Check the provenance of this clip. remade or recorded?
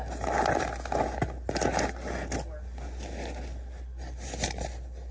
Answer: recorded